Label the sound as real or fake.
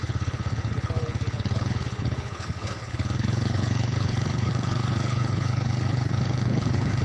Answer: fake